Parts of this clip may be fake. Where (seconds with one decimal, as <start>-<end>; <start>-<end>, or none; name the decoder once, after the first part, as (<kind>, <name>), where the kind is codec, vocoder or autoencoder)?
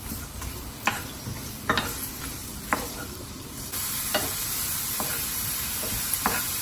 2.4-6.6 (vocoder, BigVGAN v2)